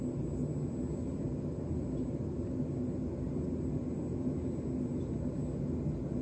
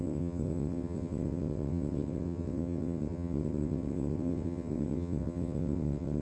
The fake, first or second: second